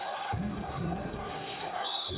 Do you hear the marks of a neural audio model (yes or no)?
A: yes